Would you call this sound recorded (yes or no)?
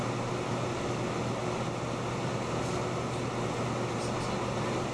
yes